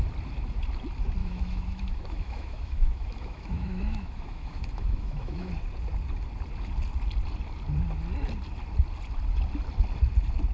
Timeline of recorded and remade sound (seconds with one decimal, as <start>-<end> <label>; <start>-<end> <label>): 0.0-1.2 recorded; 1.2-5.5 remade; 5.5-10.5 recorded